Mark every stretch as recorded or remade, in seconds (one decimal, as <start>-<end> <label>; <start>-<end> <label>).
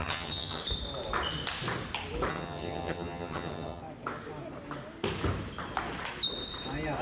0.0-0.6 remade; 0.6-2.3 recorded; 2.3-3.8 remade; 3.8-7.0 recorded